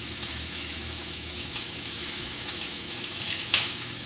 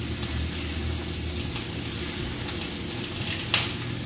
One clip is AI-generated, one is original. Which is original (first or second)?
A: second